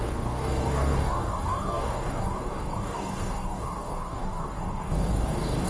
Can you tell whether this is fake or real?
fake